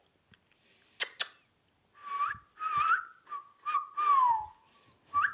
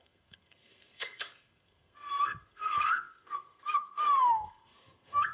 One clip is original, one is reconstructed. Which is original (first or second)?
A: first